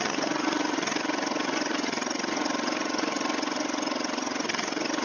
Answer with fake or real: fake